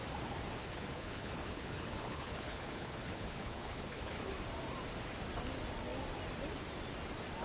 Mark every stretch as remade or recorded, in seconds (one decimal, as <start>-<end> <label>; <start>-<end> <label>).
0.0-0.6 recorded; 0.6-4.3 remade; 4.3-7.4 recorded